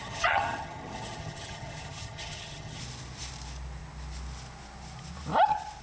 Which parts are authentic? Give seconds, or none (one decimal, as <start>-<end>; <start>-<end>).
2.8-5.8